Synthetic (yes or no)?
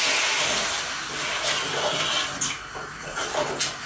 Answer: no